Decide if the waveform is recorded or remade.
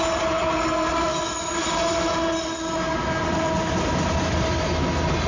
recorded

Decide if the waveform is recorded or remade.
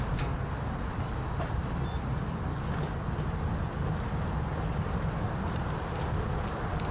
recorded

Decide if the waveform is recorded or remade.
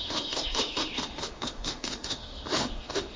remade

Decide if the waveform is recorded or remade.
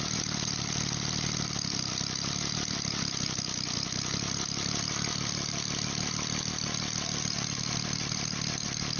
recorded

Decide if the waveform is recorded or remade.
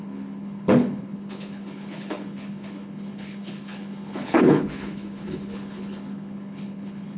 remade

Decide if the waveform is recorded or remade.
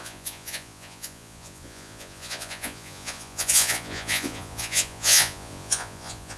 remade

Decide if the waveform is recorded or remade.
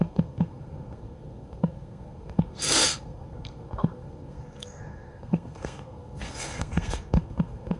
remade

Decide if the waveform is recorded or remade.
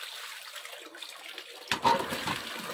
recorded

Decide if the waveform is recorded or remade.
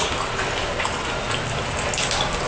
recorded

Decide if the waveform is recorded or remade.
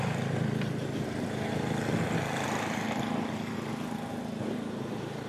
recorded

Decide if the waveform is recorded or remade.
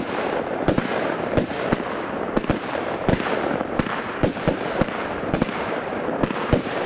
remade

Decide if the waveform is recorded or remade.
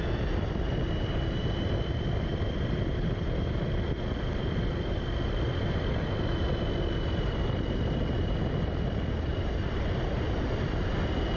recorded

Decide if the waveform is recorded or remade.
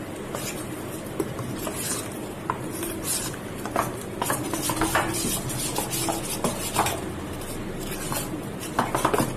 recorded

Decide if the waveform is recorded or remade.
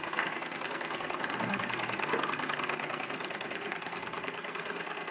remade